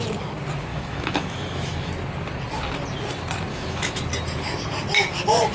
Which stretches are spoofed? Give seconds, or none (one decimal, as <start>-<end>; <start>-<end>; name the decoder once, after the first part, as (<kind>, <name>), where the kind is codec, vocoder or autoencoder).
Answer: 0.7-1.9 (autoencoder, DAC-VAE); 3.5-4.0